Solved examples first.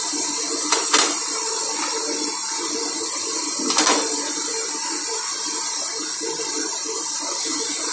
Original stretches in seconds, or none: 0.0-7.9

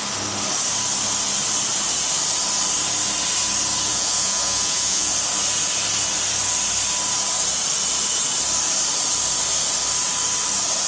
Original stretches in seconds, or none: 0.0-3.9; 5.1-10.9

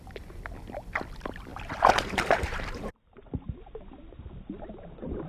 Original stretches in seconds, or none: 0.0-1.5; 4.4-5.3

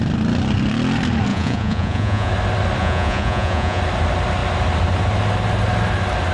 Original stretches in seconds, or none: 0.0-1.3; 2.3-2.8; 3.8-6.3

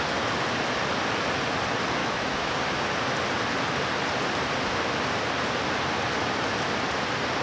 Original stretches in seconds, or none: 0.0-2.0; 2.5-7.4

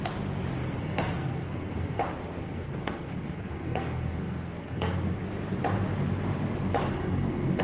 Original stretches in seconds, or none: 0.0-0.6; 2.0-2.4; 5.2-6.9

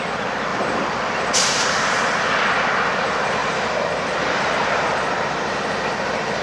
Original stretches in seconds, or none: 0.0-0.5; 2.0-3.4; 5.6-6.4

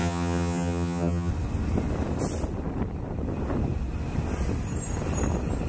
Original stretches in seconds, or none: 1.3-5.7